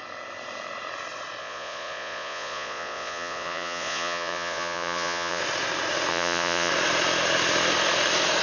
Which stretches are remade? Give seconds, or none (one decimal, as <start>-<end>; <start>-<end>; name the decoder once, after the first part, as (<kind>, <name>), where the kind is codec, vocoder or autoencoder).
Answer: 1.4-5.4 (vocoder, Vocos); 6.1-6.7